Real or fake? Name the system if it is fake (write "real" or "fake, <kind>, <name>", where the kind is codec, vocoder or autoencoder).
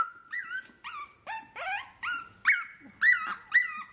real